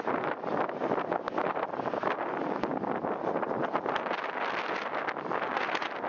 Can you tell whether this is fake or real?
real